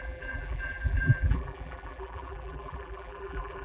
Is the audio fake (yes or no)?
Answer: yes